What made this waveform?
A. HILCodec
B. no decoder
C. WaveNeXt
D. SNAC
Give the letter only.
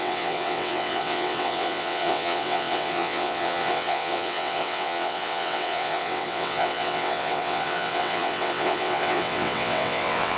C